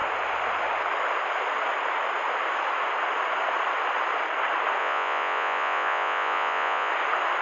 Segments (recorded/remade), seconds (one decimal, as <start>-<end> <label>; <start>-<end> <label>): 0.0-4.8 recorded; 4.8-6.9 remade; 6.9-7.4 recorded